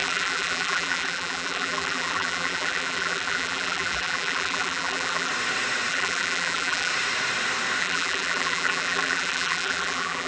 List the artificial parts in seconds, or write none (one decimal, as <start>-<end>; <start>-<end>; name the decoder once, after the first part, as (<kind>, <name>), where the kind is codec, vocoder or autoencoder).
0.0-5.3 (vocoder, BigVGAN v2); 5.9-6.9; 7.8-10.3